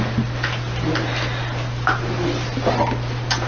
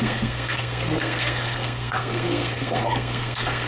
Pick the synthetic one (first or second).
second